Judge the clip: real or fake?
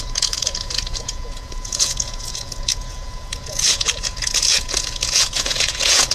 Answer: fake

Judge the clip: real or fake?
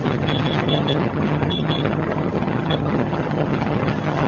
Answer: fake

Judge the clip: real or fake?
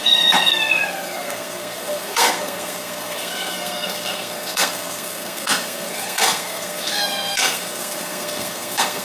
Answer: fake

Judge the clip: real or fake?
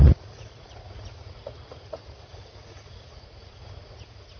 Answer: fake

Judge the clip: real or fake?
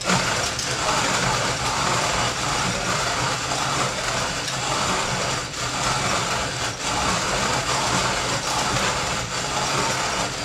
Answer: fake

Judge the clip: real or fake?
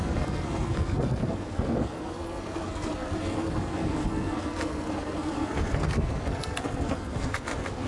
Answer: fake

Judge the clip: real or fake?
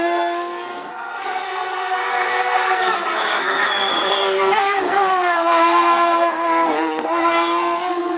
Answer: fake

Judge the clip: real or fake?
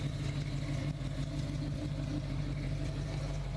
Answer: real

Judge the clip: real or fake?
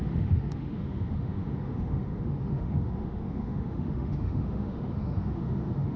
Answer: fake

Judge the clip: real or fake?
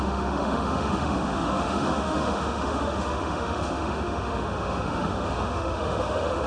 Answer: fake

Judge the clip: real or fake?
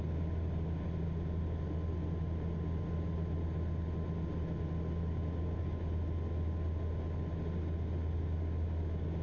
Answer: real